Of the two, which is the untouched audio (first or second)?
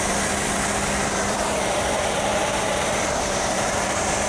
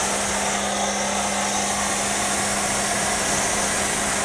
second